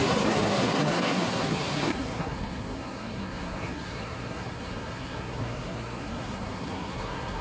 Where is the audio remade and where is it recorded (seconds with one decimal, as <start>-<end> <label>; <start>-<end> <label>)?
0.0-7.4 remade